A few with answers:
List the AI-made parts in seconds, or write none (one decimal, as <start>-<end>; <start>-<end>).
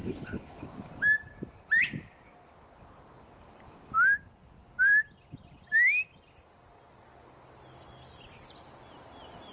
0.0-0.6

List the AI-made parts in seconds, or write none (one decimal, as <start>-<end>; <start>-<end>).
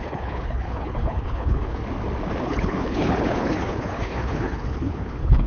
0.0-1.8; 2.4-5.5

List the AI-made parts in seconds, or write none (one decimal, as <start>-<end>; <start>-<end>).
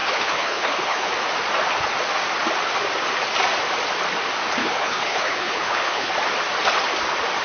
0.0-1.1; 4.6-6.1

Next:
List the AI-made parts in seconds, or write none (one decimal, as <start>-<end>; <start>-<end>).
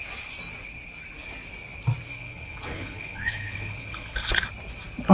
2.1-4.3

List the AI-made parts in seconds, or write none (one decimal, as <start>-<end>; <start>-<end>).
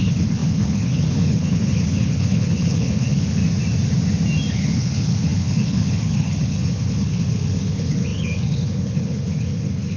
0.0-3.4; 4.5-10.0